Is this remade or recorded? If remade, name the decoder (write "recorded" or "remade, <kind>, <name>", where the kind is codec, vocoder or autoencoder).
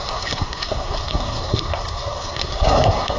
remade, codec, SNAC